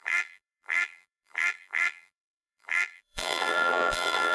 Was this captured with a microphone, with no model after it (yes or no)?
no